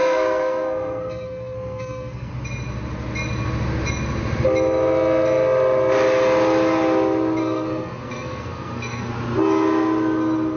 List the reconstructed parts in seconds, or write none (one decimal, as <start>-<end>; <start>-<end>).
0.0-2.3; 7.4-9.1